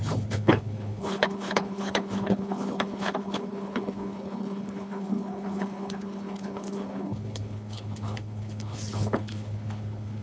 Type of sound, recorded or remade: remade